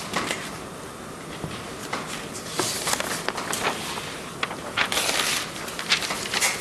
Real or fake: real